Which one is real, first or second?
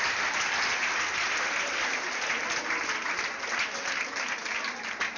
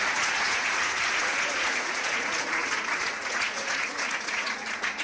first